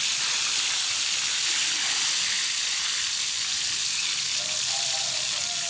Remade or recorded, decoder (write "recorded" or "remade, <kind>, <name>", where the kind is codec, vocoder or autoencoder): recorded